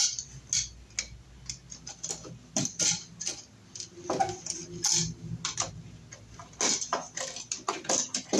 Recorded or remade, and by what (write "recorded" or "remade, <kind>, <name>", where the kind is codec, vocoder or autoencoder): recorded